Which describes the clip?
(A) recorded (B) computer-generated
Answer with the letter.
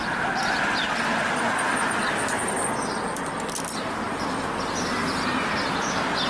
A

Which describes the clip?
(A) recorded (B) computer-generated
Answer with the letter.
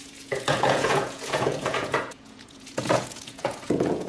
B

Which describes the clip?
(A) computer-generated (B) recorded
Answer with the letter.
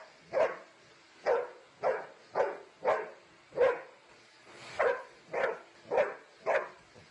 B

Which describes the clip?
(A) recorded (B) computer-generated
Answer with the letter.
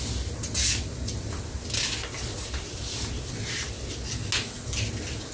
A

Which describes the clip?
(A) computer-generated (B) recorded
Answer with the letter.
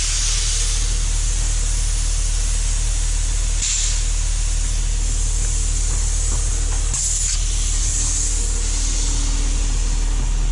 B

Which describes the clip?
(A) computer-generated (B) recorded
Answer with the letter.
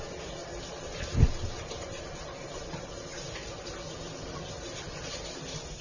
B